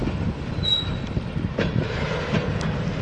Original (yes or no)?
yes